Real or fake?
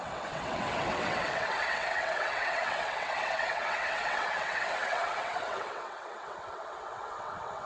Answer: fake